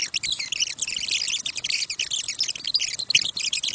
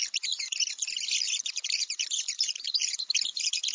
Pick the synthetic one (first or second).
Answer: second